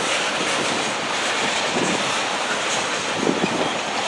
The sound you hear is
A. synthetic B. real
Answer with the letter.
B